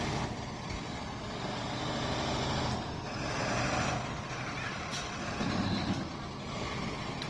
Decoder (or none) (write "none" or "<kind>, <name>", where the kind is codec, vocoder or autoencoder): none